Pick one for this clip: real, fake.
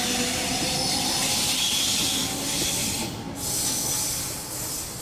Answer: real